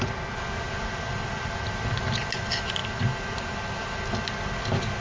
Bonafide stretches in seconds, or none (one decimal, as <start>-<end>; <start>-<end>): 0.0-5.0